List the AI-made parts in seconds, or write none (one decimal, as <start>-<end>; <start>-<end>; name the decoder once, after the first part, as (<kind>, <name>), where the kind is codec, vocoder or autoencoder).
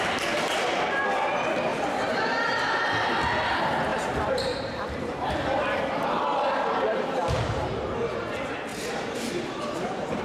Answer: 1.7-2.8 (vocoder, BigVGAN v2); 3.9-5.3; 8.7-10.2